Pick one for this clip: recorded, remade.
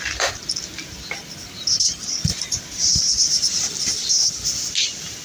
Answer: recorded